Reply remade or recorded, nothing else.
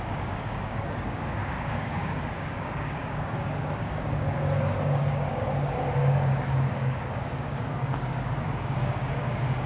remade